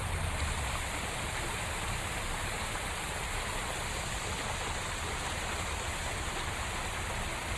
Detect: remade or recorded recorded